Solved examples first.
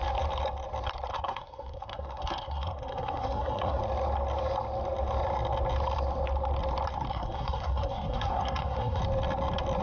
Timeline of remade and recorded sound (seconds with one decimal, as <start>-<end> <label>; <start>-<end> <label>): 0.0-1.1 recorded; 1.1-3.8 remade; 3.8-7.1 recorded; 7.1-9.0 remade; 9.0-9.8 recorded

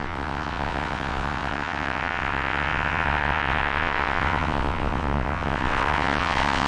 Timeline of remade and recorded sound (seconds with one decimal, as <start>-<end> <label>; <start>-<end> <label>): 0.0-6.7 remade

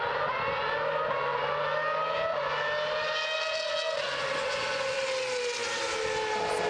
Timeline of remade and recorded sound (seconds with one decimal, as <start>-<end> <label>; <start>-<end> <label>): 0.0-4.4 recorded; 4.4-5.0 remade; 5.0-6.7 recorded

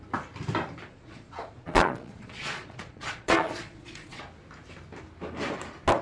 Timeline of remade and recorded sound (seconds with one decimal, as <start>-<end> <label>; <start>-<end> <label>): 0.0-0.9 recorded; 0.9-4.2 remade; 4.2-6.0 recorded

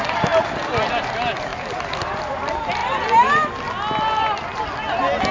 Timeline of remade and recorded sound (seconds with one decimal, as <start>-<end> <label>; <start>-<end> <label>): 0.0-5.3 recorded

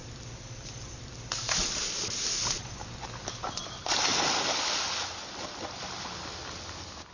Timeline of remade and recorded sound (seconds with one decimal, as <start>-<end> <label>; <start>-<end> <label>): 0.0-7.1 recorded